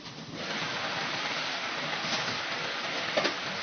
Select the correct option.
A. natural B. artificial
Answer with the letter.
A